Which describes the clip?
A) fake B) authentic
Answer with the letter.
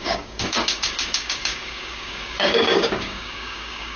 A